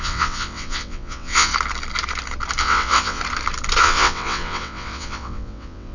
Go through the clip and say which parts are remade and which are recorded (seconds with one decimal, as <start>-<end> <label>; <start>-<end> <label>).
0.0-1.5 remade; 1.5-2.6 recorded; 2.6-3.2 remade; 3.2-3.8 recorded; 3.8-5.9 remade